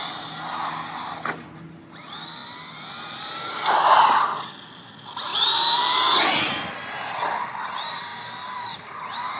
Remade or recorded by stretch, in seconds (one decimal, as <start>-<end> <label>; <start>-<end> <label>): 0.0-9.4 recorded